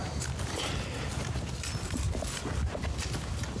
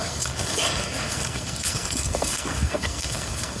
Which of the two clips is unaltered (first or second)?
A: first